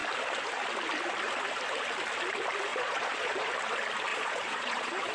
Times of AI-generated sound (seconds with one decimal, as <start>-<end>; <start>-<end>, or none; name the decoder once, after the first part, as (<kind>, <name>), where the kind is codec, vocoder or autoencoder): 2.7-3.5 (vocoder, Vocos); 4.1-5.1